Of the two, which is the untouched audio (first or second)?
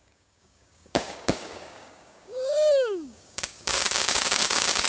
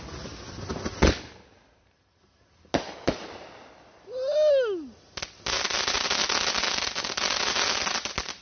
second